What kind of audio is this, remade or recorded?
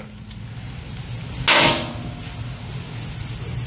recorded